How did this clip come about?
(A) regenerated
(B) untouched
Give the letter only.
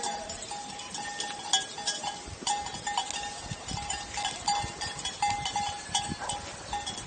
B